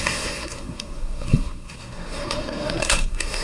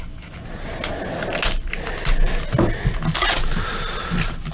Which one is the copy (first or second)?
first